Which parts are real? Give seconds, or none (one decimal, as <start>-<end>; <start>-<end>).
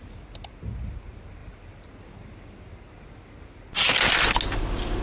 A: 0.0-5.0